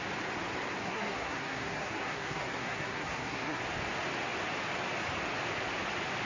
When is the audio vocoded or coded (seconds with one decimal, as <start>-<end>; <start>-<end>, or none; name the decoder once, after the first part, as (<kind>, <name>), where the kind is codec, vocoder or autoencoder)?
0.8-3.6 (codec, SNAC)